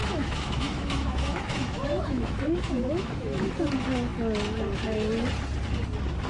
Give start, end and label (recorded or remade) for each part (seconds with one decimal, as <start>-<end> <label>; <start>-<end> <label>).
0.0-3.5 remade; 3.5-6.3 recorded